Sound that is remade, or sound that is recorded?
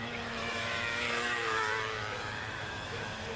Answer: remade